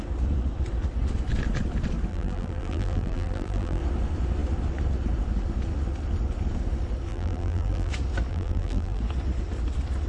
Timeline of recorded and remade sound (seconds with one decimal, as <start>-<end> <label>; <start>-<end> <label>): 0.0-2.1 recorded; 2.1-3.8 remade; 3.8-7.1 recorded; 7.1-7.9 remade; 7.9-8.3 recorded; 8.3-9.0 remade; 9.0-10.1 recorded